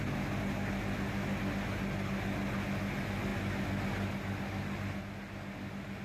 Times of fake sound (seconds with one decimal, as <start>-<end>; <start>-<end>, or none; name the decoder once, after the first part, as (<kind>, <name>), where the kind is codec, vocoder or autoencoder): none